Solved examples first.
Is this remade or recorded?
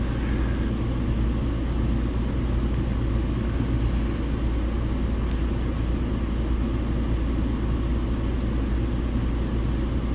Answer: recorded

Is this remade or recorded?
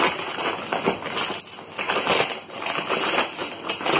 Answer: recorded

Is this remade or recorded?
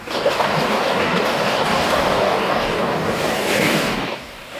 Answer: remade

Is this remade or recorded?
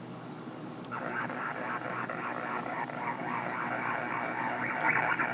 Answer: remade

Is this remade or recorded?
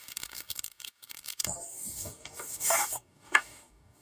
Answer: remade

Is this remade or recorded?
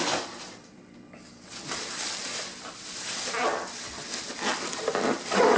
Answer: recorded